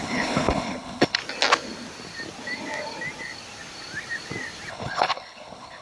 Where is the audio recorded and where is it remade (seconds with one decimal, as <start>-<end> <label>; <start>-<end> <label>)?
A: 0.0-1.2 remade; 1.2-4.7 recorded; 4.7-5.8 remade